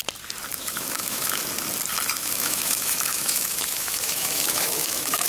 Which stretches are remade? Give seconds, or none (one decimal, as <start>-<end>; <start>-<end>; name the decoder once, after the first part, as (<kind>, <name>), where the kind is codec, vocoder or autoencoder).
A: 0.5-1.4 (autoencoder, DAC-VAE); 2.2-5.3